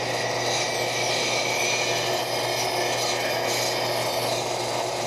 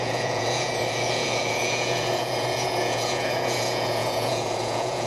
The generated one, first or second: second